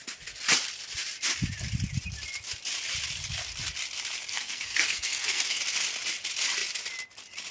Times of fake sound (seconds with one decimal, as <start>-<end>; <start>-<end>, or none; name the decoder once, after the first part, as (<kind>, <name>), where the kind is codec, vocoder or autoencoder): 4.3-5.6 (codec, SNAC)